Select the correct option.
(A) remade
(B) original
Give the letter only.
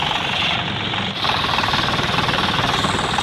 B